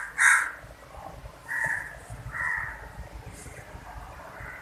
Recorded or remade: recorded